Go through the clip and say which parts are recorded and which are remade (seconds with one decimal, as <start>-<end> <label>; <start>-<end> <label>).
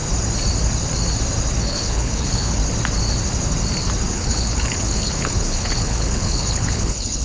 0.0-1.6 recorded; 1.6-2.6 remade; 2.6-4.1 recorded; 4.1-7.2 remade